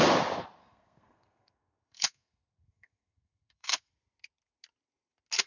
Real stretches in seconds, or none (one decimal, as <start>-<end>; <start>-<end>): 0.0-0.6; 3.9-5.5